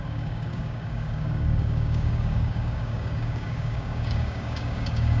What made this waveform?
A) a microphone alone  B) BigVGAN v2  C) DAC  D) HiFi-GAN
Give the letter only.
C